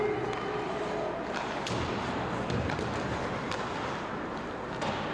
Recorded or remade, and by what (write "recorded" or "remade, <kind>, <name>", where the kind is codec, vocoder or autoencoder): recorded